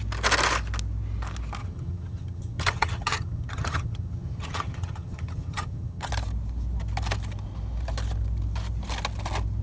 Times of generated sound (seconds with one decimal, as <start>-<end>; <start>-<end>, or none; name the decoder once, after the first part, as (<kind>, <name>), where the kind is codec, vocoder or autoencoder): 1.6-6.1 (vocoder, HiFi-GAN)